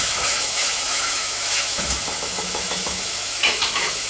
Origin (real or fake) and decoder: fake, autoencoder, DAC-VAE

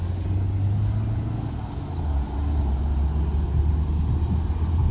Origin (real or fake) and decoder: real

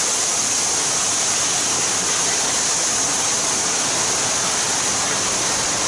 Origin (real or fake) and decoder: real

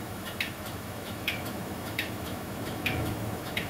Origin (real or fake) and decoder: fake, autoencoder, DAC-VAE